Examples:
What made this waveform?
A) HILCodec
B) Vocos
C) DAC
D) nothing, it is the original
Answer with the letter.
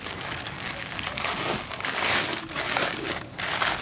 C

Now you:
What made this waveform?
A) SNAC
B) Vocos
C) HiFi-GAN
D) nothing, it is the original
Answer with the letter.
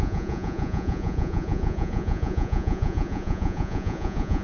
B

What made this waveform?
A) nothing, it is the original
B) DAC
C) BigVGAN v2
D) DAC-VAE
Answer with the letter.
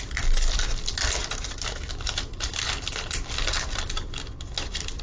A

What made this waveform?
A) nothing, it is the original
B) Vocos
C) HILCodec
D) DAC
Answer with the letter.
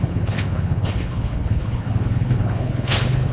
C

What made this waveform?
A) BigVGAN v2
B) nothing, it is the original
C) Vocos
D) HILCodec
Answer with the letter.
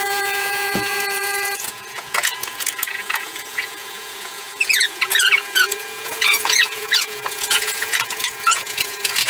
C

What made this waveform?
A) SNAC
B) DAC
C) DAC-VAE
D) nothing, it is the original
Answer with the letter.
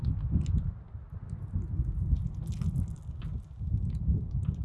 D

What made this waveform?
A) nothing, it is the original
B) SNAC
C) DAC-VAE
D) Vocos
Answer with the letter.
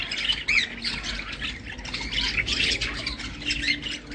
A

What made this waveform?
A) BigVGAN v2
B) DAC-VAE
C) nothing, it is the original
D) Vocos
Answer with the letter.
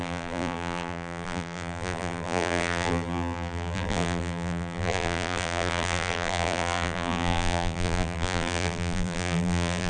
A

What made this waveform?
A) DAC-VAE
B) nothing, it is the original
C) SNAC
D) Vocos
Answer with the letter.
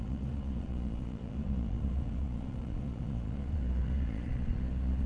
D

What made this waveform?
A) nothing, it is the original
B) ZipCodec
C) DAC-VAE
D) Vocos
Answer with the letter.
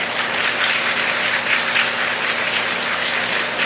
A